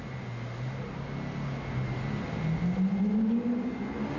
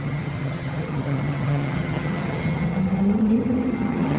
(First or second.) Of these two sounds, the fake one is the second